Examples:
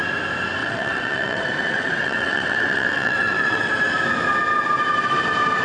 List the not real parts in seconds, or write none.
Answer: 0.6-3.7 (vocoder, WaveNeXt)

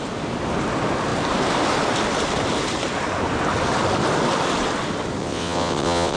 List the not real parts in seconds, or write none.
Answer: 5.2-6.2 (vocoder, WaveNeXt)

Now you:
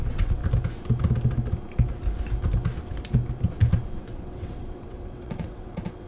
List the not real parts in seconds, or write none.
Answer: 0.0-0.4 (vocoder, WaveNeXt); 4.0-6.1